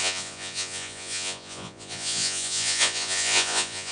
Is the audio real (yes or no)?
no